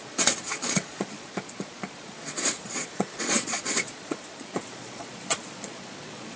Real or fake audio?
fake